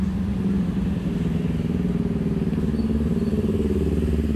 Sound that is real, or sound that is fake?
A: real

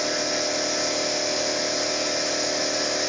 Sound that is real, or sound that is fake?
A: real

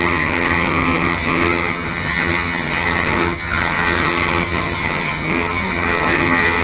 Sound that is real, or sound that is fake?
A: fake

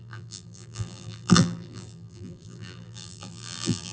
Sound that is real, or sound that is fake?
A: fake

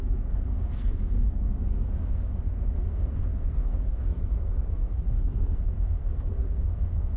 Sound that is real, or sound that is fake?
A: fake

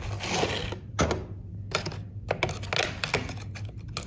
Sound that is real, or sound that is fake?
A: real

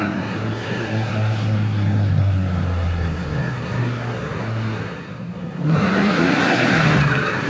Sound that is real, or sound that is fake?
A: fake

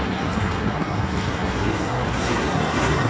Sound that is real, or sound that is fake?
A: fake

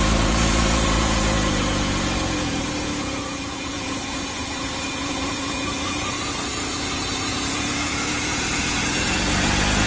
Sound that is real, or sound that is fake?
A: fake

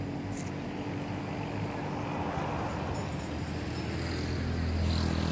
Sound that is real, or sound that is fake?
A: real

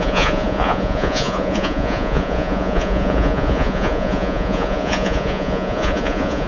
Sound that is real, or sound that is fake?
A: fake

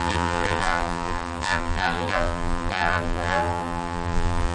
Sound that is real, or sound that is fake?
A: fake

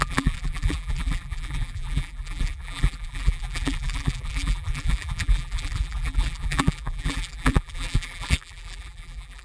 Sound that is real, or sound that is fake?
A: fake